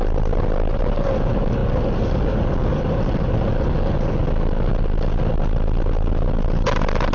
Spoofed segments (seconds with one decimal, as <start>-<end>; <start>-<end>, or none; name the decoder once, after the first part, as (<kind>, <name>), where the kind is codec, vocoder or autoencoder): none